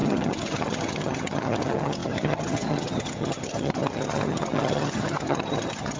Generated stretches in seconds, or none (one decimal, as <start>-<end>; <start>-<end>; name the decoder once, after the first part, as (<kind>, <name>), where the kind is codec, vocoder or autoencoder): 0.0-6.0 (vocoder, HiFi-GAN)